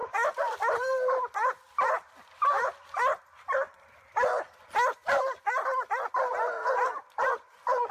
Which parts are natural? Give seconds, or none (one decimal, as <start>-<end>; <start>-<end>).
0.0-7.9